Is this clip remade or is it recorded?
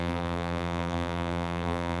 remade